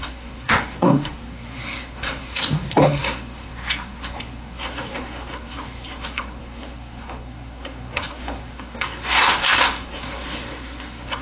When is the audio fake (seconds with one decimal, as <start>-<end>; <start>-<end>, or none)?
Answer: 0.0-11.2